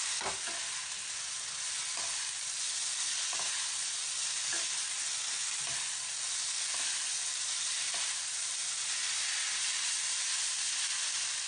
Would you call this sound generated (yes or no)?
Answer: no